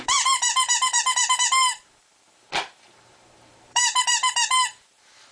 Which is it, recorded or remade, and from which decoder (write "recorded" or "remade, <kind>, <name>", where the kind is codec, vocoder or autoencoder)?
remade, vocoder, BigVGAN v2